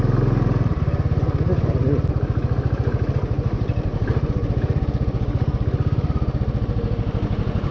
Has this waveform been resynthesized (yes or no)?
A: no